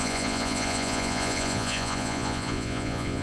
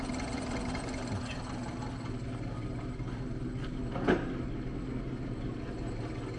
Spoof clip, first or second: first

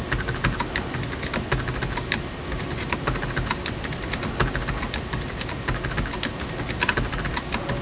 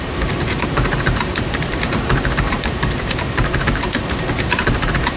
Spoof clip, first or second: second